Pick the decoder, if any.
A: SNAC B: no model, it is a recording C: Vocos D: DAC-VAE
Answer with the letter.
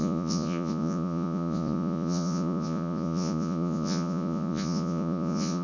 C